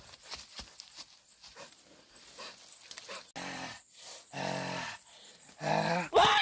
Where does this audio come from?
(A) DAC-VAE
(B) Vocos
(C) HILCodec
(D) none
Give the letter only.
D